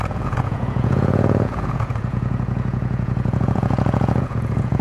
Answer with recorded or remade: remade